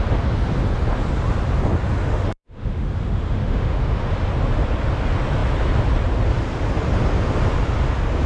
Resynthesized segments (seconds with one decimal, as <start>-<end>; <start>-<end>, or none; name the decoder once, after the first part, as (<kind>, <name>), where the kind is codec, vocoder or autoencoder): 2.0-4.1 (autoencoder, DAC-VAE)